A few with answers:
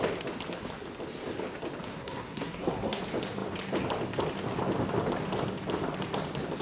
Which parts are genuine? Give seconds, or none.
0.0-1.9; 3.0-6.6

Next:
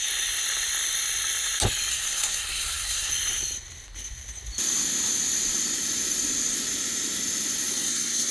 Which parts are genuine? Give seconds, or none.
0.0-1.9; 3.1-7.7

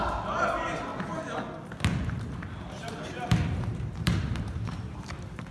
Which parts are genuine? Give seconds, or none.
0.9-2.1

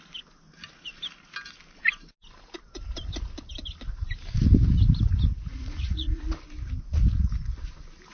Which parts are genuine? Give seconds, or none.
0.0-5.5; 6.2-8.1

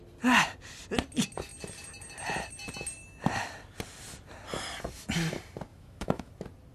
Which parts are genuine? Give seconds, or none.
0.0-5.7; 6.3-6.7

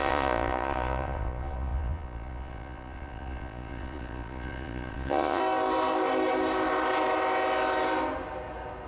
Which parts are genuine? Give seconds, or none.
5.4-8.9

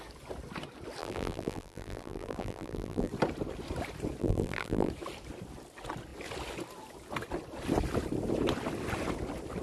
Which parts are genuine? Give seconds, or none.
0.0-1.0; 3.1-4.2; 4.9-9.6